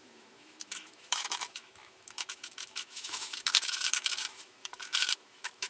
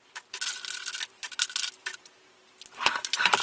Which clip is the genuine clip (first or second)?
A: second